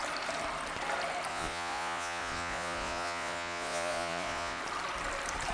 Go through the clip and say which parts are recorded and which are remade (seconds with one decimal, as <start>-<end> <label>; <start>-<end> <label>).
0.0-1.3 recorded; 1.3-4.6 remade; 4.6-5.5 recorded